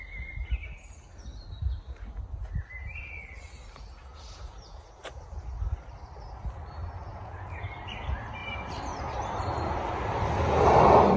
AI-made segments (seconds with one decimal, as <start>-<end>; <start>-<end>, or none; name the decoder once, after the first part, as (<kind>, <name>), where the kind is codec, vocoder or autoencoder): 4.1-5.5 (vocoder, Vocos); 7.1-7.7